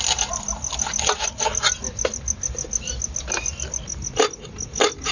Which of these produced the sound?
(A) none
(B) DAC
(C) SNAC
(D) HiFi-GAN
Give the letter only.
A